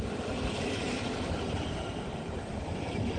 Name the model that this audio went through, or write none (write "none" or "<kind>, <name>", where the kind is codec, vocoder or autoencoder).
none